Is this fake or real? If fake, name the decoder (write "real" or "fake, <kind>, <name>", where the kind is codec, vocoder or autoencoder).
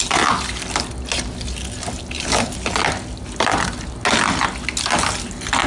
real